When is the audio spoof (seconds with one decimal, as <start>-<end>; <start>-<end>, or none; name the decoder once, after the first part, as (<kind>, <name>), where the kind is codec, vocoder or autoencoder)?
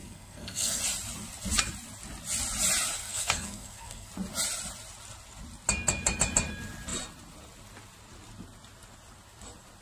0.0-0.8 (codec, SNAC); 3.0-4.1